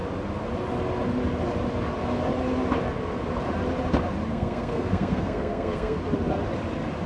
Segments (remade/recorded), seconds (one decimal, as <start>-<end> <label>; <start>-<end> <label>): 0.0-4.3 recorded; 4.3-6.0 remade; 6.0-7.1 recorded